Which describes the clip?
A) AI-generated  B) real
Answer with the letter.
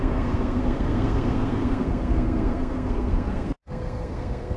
A